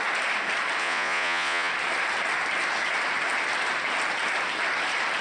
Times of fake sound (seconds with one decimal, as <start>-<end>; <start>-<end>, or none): 0.8-1.7